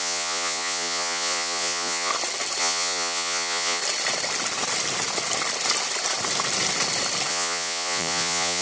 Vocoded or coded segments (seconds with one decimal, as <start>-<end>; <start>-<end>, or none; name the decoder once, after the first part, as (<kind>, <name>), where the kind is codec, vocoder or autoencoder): 0.0-2.1 (vocoder, Vocos); 2.6-3.8; 7.3-8.6

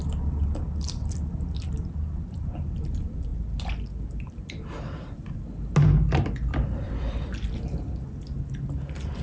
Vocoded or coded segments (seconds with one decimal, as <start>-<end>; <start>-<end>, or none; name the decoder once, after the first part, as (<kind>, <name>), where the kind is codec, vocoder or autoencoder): none